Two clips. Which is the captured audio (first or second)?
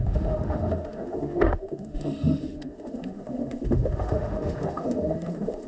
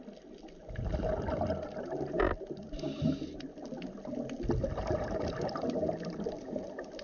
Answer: second